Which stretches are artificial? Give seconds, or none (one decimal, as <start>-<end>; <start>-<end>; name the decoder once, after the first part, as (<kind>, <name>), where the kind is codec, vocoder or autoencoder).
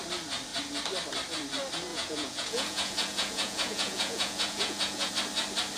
1.9-5.1 (vocoder, Vocos)